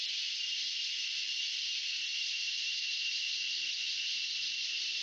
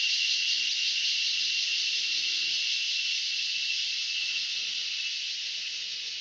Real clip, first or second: second